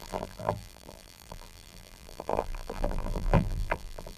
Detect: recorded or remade remade